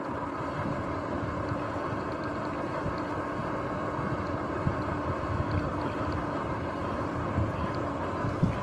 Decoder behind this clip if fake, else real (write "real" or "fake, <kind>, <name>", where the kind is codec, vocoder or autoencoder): real